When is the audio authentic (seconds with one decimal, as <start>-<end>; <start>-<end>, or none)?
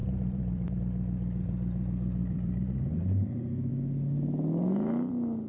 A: 0.8-2.2; 3.3-5.5